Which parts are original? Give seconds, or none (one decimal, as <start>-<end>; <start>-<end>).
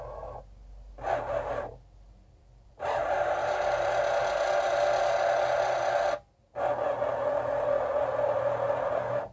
0.0-1.5; 4.0-9.3